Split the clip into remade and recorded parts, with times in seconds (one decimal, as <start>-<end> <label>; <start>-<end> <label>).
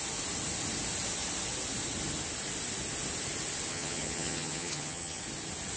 0.0-3.7 recorded; 3.7-5.2 remade; 5.2-5.8 recorded